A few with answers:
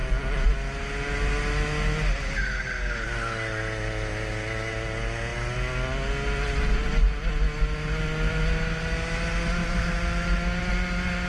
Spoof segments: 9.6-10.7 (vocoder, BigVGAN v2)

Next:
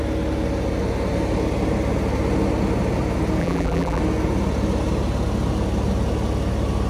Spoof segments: 3.4-4.0 (vocoder, BigVGAN v2)

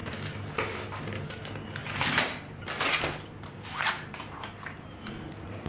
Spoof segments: 1.8-5.1 (vocoder, BigVGAN v2)

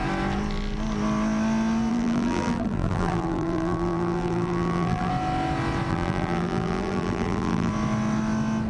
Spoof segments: 1.9-5.1 (vocoder, BigVGAN v2); 5.9-7.7